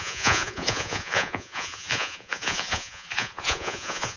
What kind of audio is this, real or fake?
fake